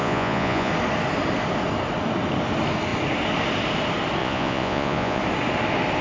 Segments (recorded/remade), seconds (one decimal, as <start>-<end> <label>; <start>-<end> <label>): 0.0-0.7 remade; 0.7-4.2 recorded; 4.2-5.2 remade; 5.2-6.0 recorded